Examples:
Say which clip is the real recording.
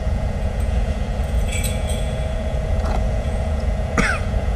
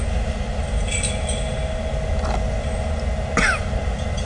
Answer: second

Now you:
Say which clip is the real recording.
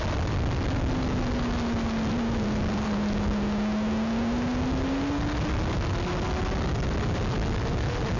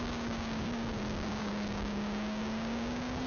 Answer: first